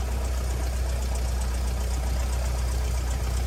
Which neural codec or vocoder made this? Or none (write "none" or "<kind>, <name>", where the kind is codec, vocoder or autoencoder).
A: none